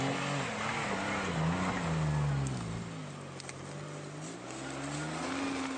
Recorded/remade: recorded